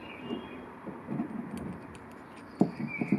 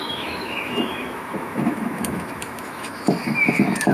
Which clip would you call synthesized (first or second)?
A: second